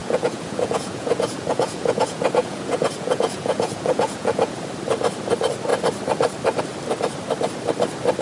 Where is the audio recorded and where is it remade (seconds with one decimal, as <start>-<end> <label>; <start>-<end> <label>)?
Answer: 0.0-4.6 remade; 4.6-8.2 recorded